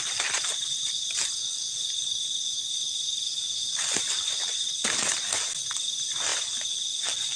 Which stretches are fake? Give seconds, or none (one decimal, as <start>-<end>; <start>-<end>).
none